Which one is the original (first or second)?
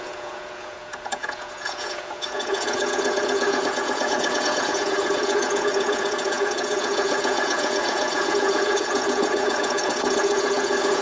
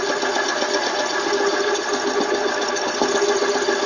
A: second